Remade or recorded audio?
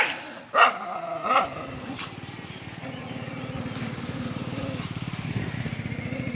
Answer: recorded